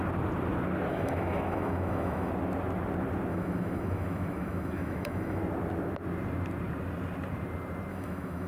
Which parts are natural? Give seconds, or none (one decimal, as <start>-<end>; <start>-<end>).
0.0-0.9; 2.3-3.3; 5.4-7.9